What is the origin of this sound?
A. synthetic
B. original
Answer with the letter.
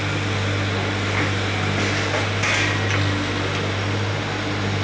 B